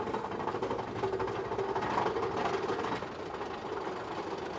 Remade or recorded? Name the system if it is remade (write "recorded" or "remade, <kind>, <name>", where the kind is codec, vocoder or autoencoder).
recorded